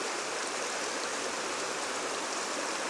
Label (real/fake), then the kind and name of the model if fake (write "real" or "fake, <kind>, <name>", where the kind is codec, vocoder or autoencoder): fake, vocoder, BigVGAN v2